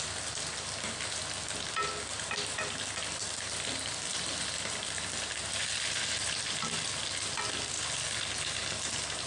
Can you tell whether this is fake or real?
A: real